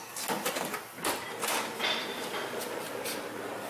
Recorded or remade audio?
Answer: recorded